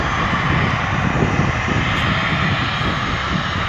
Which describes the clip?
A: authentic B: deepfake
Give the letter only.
A